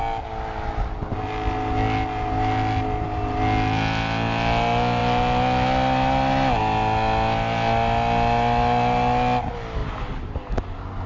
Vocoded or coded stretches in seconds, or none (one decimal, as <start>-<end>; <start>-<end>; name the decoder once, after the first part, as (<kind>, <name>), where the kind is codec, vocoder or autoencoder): none